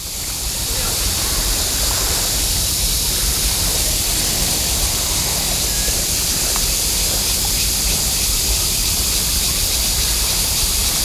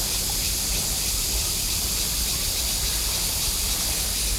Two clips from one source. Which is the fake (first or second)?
first